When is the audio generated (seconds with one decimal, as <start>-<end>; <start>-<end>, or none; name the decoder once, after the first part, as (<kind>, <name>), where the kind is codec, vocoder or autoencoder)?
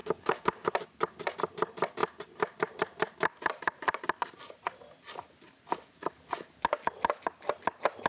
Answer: 0.0-0.7 (codec, DAC)